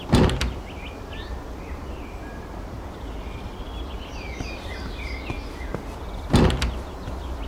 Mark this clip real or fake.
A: real